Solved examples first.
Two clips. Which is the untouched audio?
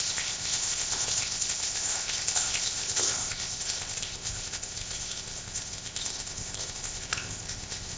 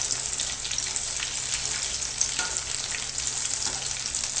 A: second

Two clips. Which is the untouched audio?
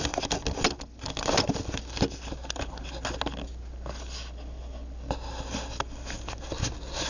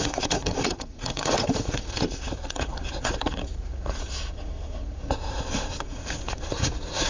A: first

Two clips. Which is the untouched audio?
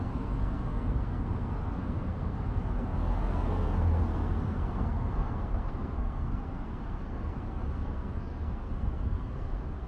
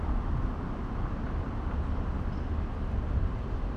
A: second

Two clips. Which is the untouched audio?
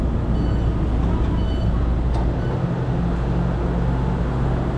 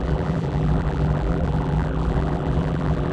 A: first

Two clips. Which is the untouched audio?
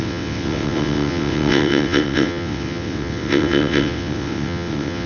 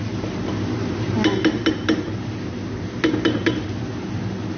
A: second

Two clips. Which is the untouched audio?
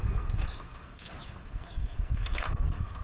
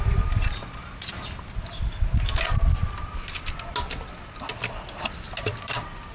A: second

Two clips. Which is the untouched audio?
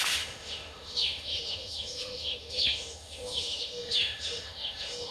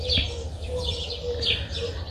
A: second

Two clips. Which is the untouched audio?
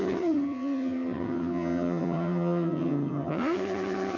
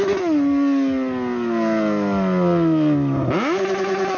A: second